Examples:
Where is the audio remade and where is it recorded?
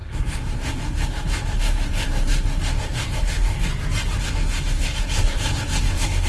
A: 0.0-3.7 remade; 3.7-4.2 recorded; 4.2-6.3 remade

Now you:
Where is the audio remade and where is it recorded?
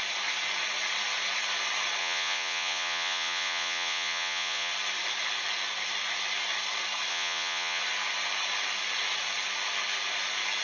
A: 0.0-2.0 recorded; 2.0-4.7 remade; 4.7-7.1 recorded; 7.1-7.8 remade; 7.8-10.6 recorded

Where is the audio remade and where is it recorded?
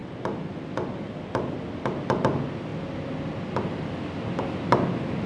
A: 0.0-5.3 recorded